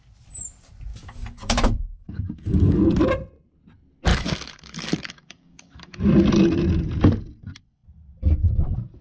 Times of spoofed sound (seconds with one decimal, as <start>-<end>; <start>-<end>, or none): 0.9-2.8; 4.1-6.0